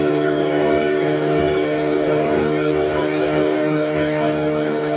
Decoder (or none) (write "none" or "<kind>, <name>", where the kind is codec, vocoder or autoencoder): codec, DAC